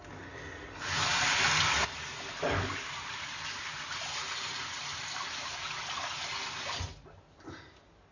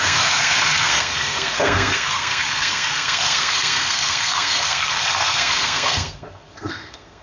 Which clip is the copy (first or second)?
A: second